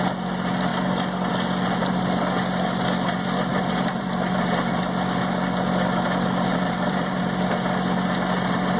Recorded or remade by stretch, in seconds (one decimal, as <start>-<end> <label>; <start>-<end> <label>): 0.0-3.5 recorded; 3.5-4.8 remade; 4.8-6.5 recorded; 6.5-7.2 remade; 7.2-8.8 recorded